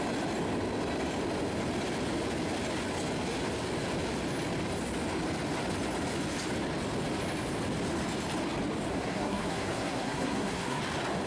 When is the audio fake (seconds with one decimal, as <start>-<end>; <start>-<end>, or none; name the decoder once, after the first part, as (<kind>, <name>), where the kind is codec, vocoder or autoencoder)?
8.9-10.8 (codec, SNAC)